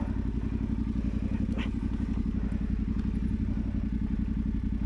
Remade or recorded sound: recorded